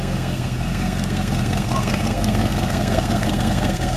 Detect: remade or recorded remade